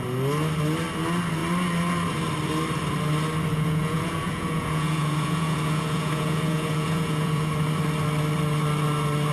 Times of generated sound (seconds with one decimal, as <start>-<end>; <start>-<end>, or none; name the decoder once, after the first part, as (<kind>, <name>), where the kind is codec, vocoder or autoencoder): 3.5-7.5 (vocoder, Vocos)